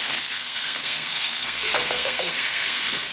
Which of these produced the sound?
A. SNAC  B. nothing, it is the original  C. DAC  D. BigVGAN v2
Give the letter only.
A